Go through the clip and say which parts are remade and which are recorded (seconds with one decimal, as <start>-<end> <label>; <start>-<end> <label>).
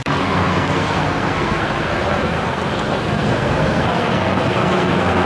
0.0-5.2 remade